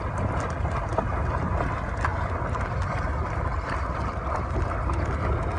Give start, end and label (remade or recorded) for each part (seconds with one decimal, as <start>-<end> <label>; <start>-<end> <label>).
0.0-5.6 recorded